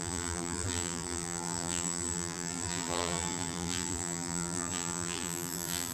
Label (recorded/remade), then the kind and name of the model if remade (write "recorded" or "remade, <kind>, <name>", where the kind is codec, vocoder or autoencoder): remade, vocoder, BigVGAN v2